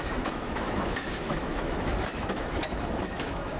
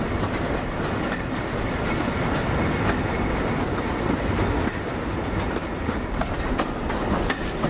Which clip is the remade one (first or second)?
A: first